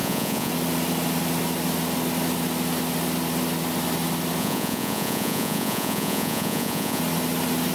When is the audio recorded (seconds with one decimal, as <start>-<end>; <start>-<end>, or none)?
0.5-4.4; 7.0-7.7